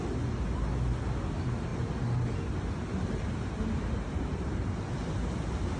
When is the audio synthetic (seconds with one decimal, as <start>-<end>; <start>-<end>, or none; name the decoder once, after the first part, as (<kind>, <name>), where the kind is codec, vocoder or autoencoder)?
none